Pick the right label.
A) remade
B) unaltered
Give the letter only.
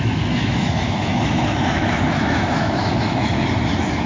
A